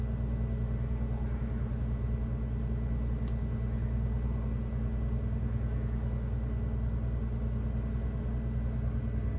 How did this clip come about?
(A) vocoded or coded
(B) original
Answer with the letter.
B